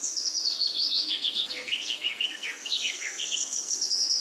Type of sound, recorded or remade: remade